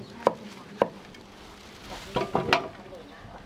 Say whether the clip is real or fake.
real